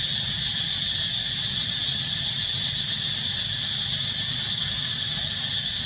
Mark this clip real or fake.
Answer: real